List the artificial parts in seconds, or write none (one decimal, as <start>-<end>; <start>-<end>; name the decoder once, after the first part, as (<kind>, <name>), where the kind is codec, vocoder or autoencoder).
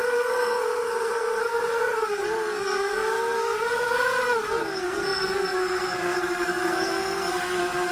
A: 0.0-7.9 (codec, SNAC)